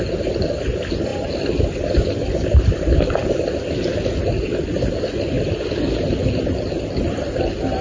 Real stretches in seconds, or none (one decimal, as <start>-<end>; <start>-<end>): 0.0-7.8